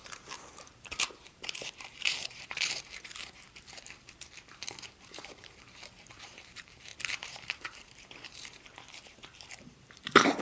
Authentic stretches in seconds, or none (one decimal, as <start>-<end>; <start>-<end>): none